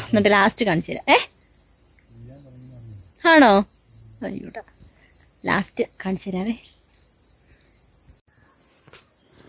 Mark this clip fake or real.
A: real